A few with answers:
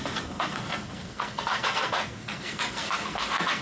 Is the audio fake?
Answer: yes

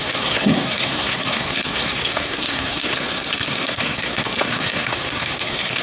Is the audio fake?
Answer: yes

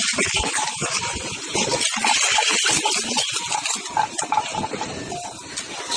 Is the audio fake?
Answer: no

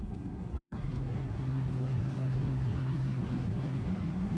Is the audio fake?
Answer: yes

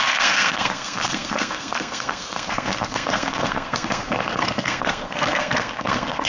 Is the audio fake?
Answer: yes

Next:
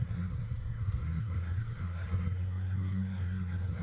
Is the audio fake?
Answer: yes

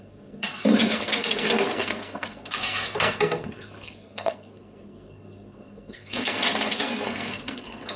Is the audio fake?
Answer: yes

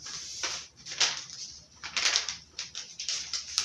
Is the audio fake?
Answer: no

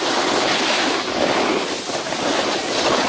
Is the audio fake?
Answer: no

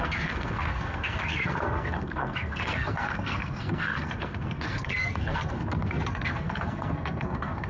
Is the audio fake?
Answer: yes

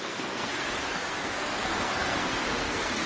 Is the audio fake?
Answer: yes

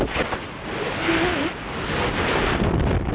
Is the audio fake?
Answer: no